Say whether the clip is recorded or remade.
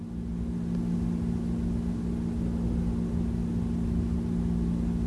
recorded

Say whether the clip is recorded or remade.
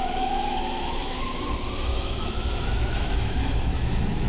remade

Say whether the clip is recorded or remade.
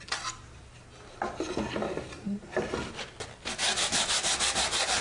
recorded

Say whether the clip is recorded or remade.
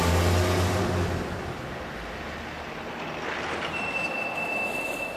recorded